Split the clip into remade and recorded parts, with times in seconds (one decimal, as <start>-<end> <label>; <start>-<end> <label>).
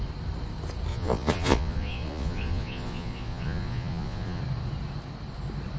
0.0-0.9 recorded; 0.9-4.4 remade; 4.4-5.8 recorded